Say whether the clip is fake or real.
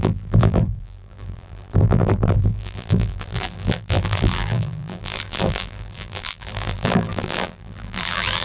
fake